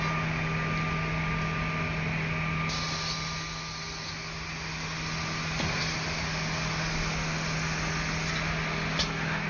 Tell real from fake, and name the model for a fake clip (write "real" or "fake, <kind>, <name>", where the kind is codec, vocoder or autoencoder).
real